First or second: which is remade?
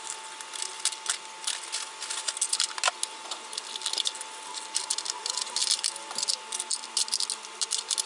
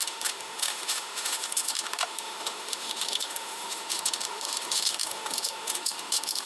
second